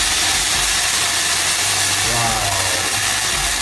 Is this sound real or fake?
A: real